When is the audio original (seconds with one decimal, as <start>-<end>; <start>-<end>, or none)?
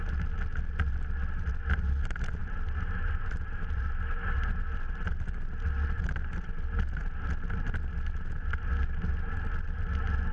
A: 0.0-10.3